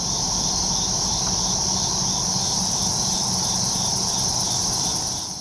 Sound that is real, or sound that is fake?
fake